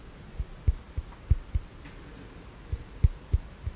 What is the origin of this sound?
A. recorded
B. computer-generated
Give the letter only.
A